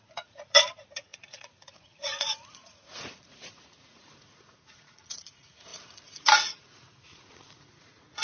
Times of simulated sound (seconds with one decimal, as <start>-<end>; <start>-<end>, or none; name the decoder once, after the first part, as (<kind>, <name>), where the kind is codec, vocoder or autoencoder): 0.0-8.2 (vocoder, Vocos)